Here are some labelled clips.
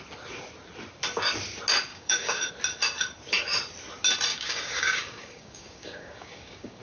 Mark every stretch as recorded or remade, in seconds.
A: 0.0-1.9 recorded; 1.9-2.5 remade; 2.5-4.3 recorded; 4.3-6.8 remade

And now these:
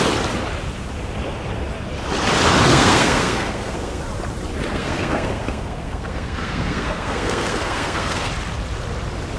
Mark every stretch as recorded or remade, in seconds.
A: 0.0-2.7 recorded; 2.7-4.0 remade; 4.0-4.7 recorded; 4.7-8.3 remade; 8.3-9.4 recorded

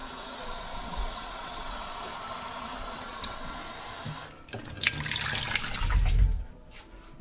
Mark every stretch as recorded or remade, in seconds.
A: 0.0-2.1 remade; 2.1-2.6 recorded; 2.6-3.6 remade; 3.6-7.2 recorded

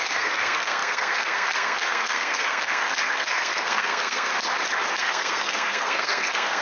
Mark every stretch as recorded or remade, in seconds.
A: 0.0-4.3 remade; 4.3-5.0 recorded; 5.0-6.6 remade

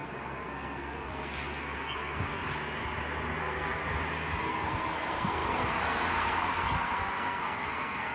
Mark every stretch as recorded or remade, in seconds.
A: 0.0-2.5 remade; 2.5-3.4 recorded; 3.4-3.8 remade; 3.8-4.4 recorded; 4.4-8.1 remade

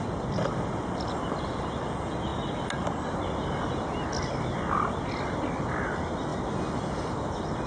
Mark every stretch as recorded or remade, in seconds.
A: 0.0-7.7 recorded